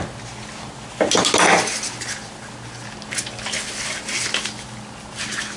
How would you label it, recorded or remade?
recorded